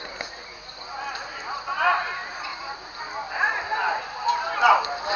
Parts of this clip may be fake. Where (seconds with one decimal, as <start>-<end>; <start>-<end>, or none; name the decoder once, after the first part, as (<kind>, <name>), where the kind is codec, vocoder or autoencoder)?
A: none